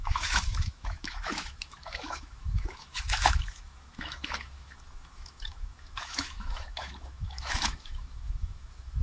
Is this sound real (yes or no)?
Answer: no